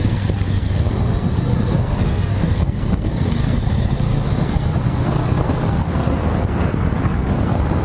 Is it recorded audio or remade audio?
remade